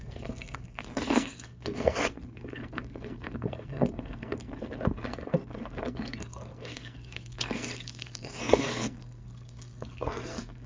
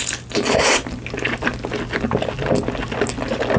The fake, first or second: first